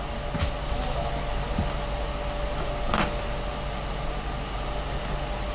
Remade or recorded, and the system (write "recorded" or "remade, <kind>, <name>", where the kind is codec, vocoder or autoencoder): recorded